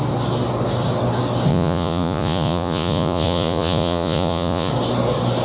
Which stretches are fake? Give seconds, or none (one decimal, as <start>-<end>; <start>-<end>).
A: 1.5-4.7